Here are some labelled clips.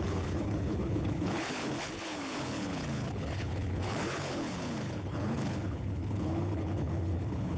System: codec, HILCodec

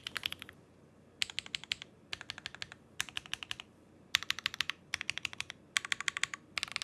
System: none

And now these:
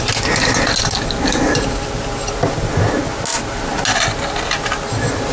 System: none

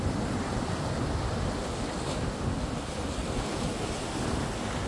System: none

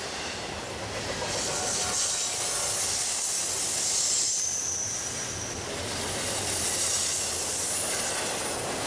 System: none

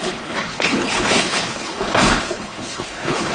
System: codec, HILCodec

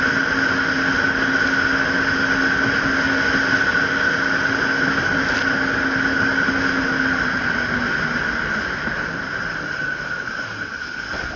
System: none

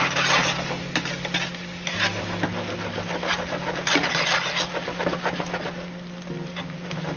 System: none